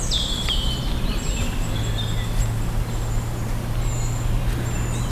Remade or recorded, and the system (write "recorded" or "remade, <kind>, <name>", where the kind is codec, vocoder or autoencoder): recorded